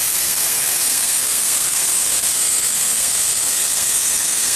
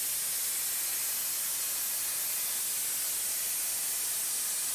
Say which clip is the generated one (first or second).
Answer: first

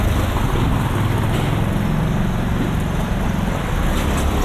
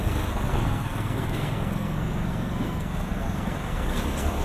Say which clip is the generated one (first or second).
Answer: second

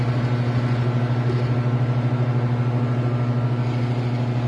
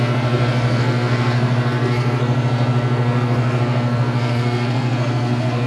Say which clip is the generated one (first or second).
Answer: second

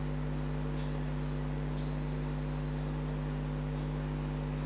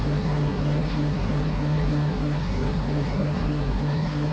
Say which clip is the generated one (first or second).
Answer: second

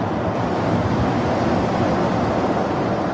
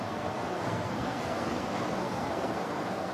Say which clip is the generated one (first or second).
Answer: second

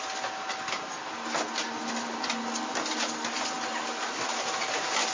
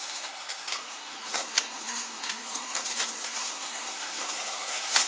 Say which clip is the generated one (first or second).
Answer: second